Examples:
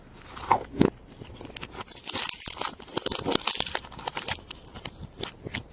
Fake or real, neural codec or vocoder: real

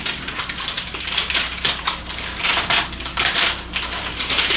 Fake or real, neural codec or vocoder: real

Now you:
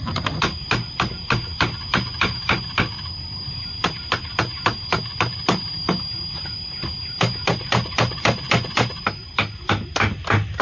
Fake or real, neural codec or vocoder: real